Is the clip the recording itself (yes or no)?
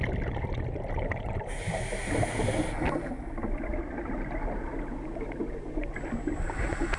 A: yes